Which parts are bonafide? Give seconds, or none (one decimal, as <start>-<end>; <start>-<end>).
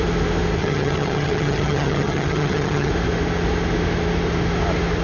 0.0-0.6; 2.9-5.0